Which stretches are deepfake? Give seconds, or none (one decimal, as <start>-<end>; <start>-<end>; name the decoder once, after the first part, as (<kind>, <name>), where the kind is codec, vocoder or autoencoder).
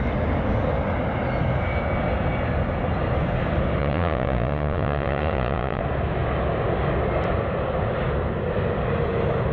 3.8-5.8 (vocoder, Vocos)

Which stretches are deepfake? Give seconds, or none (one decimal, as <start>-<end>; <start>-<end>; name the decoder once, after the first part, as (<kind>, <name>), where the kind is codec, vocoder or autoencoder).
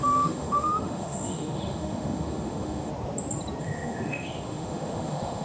0.0-2.9 (autoencoder, DAC-VAE); 3.6-5.4